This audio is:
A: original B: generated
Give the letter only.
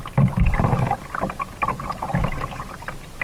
A